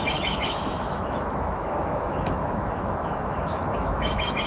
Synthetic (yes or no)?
yes